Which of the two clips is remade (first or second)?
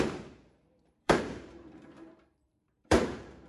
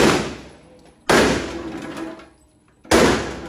first